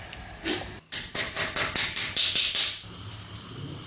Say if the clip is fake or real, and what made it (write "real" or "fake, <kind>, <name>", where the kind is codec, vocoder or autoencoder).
real